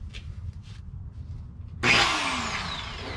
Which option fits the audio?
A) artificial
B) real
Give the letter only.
B